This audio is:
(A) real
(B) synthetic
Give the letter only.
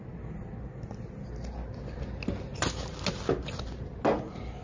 A